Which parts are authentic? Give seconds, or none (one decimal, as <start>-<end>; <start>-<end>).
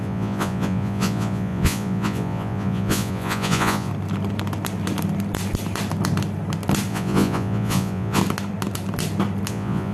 3.9-6.9; 8.2-9.5